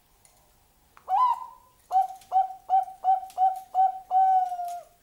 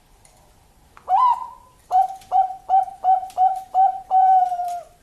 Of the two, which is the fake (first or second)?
second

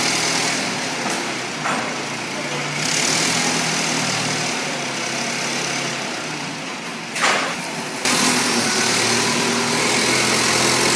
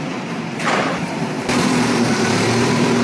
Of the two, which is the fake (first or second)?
second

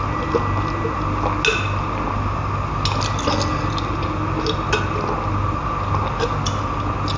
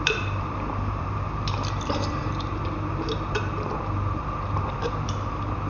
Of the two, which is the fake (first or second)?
second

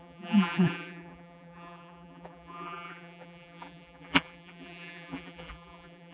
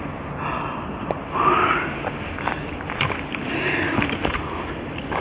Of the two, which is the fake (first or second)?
first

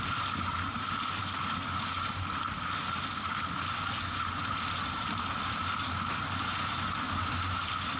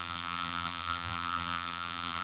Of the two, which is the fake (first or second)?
second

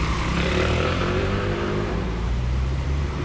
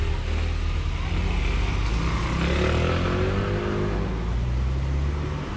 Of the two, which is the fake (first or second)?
first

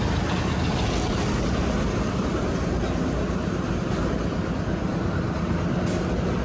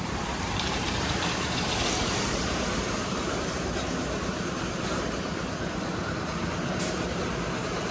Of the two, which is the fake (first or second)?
second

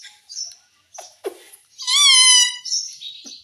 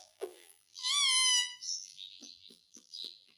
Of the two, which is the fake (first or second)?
second